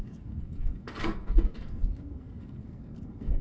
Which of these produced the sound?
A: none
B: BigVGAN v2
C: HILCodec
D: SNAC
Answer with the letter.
D